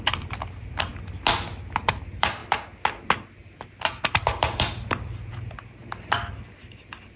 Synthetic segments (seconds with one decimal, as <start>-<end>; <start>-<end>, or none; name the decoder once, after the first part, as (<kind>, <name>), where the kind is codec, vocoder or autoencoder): 0.0-0.9 (vocoder, BigVGAN v2); 1.8-2.4; 3.8-5.8; 6.3-7.2